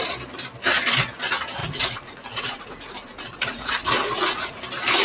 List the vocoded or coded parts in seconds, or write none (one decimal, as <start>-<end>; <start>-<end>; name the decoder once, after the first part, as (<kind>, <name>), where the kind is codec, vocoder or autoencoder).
1.6-4.6 (vocoder, Vocos)